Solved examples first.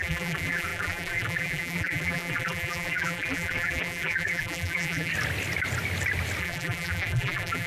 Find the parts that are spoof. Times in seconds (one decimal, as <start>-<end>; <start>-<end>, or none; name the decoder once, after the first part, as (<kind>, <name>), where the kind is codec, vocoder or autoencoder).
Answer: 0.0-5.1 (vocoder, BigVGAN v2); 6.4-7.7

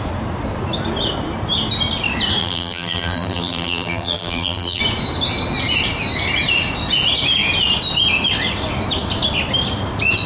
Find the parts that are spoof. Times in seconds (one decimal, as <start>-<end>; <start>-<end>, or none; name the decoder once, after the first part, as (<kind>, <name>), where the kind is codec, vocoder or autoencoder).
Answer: 2.4-4.8 (vocoder, BigVGAN v2)

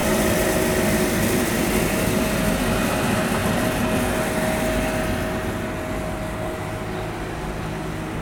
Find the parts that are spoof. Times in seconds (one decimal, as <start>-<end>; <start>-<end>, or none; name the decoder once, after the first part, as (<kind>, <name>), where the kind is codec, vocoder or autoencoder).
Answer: 0.0-1.8 (vocoder, BigVGAN v2)